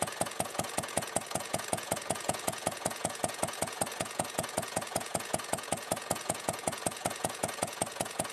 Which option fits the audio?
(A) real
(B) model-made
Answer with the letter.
B